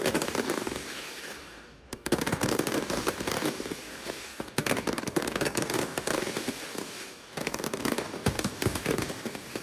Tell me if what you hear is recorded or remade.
remade